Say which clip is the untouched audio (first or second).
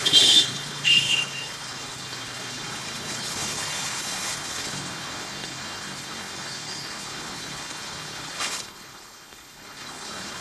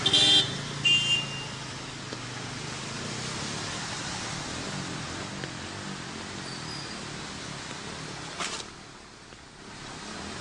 second